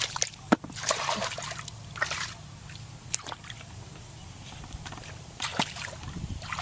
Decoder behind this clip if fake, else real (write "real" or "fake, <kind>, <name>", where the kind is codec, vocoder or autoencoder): fake, vocoder, BigVGAN v2